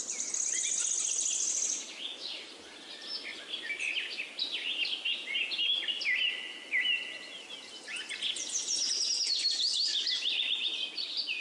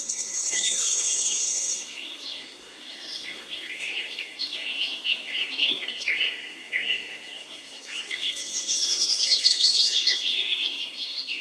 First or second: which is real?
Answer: first